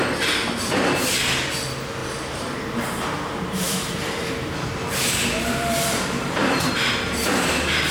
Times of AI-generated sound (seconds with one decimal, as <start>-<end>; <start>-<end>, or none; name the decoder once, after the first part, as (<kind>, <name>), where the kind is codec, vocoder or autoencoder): 2.0-6.7 (vocoder, BigVGAN v2)